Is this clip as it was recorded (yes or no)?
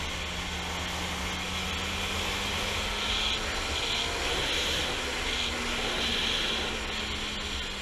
yes